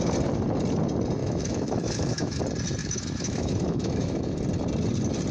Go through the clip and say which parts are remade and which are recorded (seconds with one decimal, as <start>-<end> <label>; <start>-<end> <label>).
0.0-1.2 recorded; 1.2-2.4 remade; 2.4-2.8 recorded; 2.8-4.4 remade; 4.4-5.3 recorded